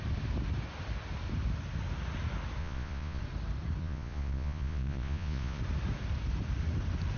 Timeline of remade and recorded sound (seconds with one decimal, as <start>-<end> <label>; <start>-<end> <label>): 0.0-2.6 recorded; 2.6-3.2 remade; 3.2-3.8 recorded; 3.8-5.6 remade; 5.6-7.2 recorded